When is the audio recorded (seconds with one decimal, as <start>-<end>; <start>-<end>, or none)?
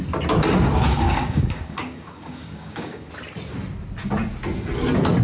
0.0-0.9; 3.1-5.2